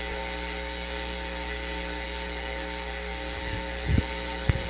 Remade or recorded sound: remade